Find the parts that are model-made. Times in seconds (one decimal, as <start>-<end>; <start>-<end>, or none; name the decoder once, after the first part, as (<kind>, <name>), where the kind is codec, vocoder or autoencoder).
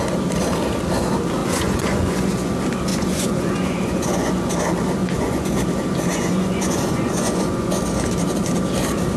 1.4-2.5 (vocoder, Vocos); 2.9-4.5; 5.0-5.5; 6.1-7.8